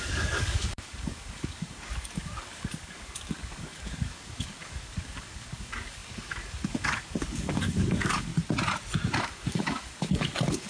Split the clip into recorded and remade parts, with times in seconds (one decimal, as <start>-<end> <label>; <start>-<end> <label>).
0.0-8.3 remade; 8.3-9.2 recorded; 9.2-10.7 remade